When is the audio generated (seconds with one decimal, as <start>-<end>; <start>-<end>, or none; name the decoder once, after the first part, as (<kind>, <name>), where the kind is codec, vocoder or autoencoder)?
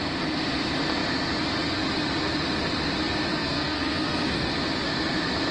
3.3-4.5 (codec, SNAC)